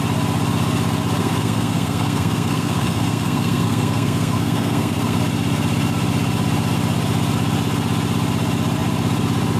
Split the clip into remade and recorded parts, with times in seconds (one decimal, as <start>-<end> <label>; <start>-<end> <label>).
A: 0.0-1.2 recorded; 1.2-5.2 remade; 5.2-9.6 recorded